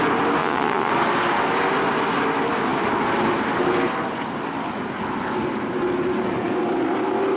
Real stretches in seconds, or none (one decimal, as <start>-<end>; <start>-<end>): 0.0-0.4; 0.9-7.4